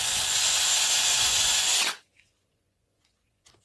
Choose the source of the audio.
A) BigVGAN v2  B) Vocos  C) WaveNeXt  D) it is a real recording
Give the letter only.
B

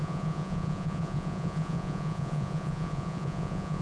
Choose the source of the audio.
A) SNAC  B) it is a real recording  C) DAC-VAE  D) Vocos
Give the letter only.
D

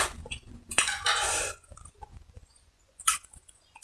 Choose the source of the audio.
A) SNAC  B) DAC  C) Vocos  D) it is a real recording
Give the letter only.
C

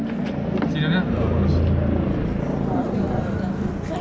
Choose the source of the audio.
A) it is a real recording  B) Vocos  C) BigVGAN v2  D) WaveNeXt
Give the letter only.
A